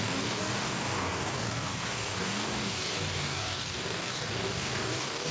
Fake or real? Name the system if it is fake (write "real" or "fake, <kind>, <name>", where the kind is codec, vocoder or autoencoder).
fake, codec, DAC